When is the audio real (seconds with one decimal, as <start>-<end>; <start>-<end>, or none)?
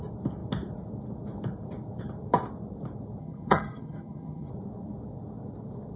0.0-3.2; 4.5-6.0